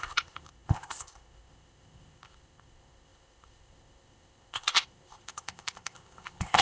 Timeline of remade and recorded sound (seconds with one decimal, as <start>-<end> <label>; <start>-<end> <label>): 0.0-6.6 remade